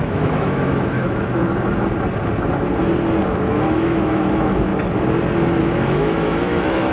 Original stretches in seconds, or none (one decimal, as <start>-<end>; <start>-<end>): 1.4-3.5; 4.7-5.6

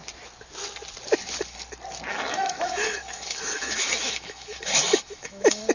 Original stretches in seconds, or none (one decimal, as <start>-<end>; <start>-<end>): 0.0-2.1

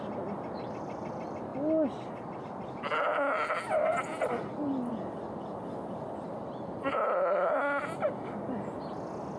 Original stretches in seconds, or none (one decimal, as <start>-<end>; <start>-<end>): 0.0-9.4

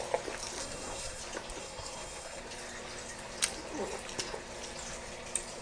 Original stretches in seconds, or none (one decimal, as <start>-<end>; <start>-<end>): 0.0-0.6; 1.2-1.6; 2.4-5.6

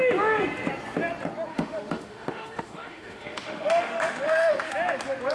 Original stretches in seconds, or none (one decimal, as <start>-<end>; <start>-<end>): 0.0-1.5; 4.7-5.3

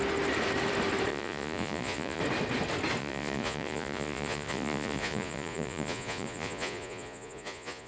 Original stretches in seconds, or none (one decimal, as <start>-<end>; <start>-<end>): 0.0-1.1; 2.2-3.0

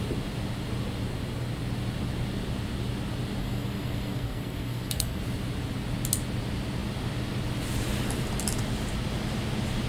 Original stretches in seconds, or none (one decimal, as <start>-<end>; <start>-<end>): 0.0-3.4; 5.2-9.9

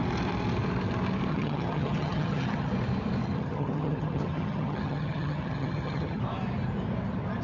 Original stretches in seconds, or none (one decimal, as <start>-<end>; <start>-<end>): 0.0-1.3; 2.7-3.2; 6.2-7.4